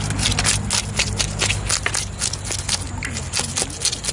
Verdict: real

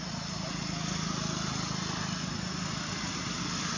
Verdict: real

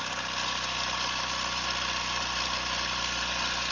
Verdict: real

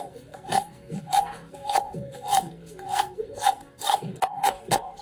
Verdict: fake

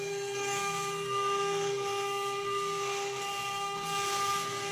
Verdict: fake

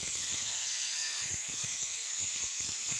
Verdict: fake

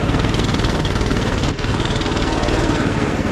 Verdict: fake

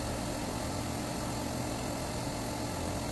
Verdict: real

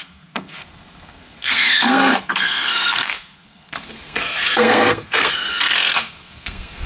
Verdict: fake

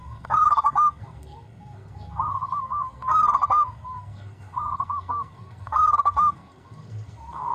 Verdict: fake